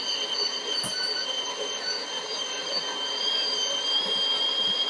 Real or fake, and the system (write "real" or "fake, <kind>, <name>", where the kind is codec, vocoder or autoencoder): real